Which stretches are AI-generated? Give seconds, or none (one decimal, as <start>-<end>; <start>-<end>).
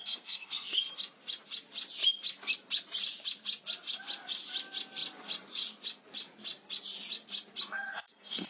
0.0-0.8; 7.7-8.5